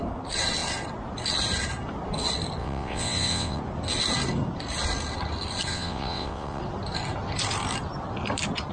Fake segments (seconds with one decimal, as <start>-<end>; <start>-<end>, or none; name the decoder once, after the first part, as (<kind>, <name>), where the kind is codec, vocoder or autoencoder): 2.6-3.6 (vocoder, WaveNeXt); 5.7-6.6